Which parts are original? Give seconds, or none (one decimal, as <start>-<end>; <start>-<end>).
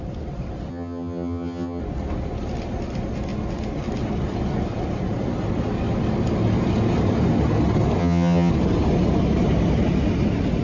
0.0-0.7; 1.8-8.0; 8.5-10.6